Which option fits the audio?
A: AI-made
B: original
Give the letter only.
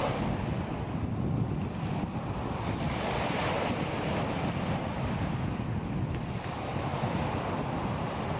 A